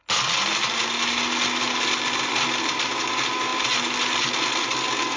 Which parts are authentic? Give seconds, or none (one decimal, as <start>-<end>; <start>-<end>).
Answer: 0.0-5.2